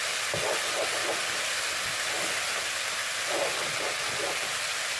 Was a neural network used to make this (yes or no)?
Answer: no